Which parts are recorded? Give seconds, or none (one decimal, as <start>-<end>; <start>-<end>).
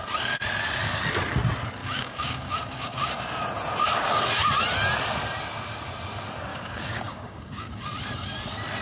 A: 0.0-1.8; 3.1-6.5; 7.7-8.8